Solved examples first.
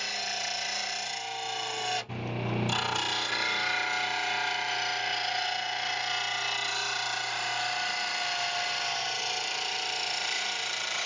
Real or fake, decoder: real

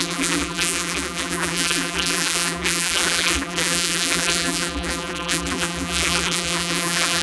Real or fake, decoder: fake, vocoder, BigVGAN v2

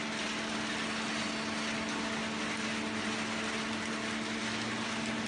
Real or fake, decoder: real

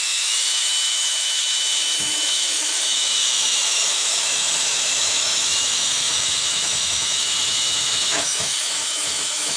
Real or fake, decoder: fake, autoencoder, DAC-VAE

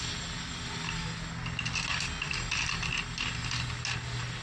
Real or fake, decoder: real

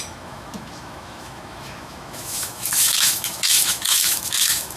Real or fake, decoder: fake, autoencoder, DAC-VAE